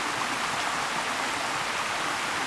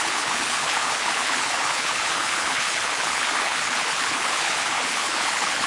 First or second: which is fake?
second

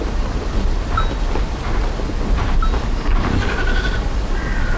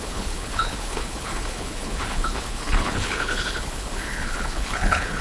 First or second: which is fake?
second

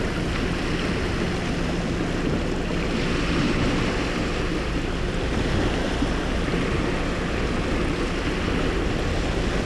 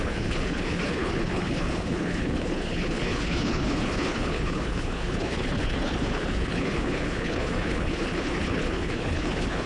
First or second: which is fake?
second